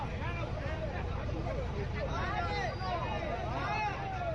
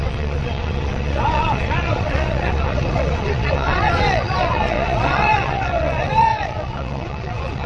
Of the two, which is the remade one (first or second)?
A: second